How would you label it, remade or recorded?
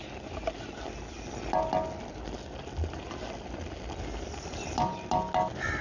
recorded